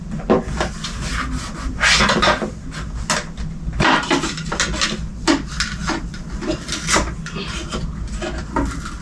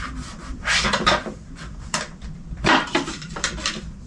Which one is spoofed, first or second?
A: second